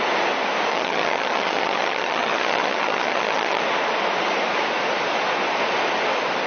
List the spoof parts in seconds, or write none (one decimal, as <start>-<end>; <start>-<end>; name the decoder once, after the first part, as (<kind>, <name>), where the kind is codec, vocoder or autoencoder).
0.7-3.6 (vocoder, HiFi-GAN)